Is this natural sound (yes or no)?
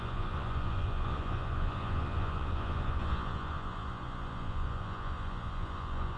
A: no